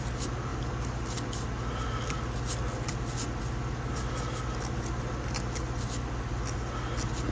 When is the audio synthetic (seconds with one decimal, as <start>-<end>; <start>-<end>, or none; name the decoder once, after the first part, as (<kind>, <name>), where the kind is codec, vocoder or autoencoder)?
none